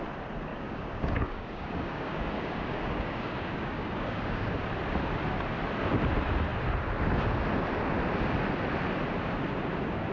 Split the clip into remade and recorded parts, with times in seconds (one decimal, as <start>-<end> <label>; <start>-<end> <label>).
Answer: 0.0-0.5 recorded; 0.5-4.6 remade; 4.6-10.1 recorded